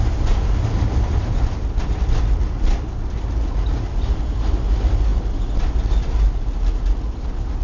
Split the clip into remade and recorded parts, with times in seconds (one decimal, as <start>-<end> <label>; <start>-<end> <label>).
0.0-7.6 recorded